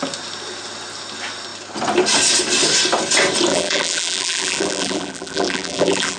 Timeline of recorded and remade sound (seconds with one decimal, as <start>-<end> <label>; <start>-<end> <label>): 0.0-3.5 recorded; 3.5-6.2 remade